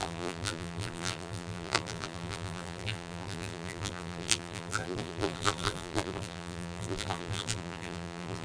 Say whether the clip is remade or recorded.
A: remade